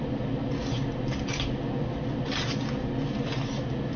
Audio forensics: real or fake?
real